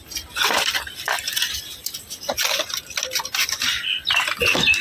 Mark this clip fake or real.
fake